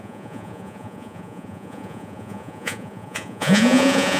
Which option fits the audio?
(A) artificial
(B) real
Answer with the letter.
A